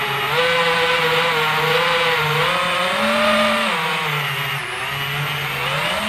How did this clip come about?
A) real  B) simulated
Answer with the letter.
A